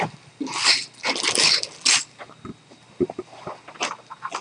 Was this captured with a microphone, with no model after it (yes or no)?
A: yes